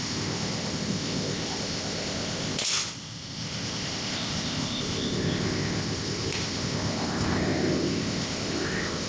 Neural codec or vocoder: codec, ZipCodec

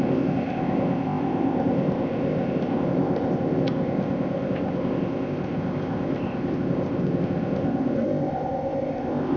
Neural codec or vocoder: codec, ZipCodec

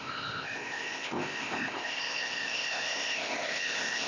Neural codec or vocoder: codec, ZipCodec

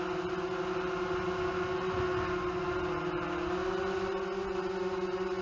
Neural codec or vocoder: none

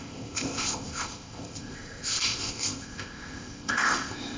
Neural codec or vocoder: codec, ZipCodec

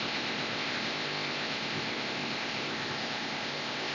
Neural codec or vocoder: codec, ZipCodec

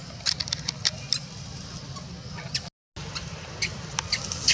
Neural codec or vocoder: none